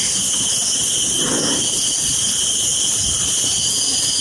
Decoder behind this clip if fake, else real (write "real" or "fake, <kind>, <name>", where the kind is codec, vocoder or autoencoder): real